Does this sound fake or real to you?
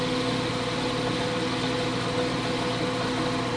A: real